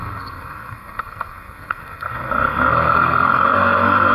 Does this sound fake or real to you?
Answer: fake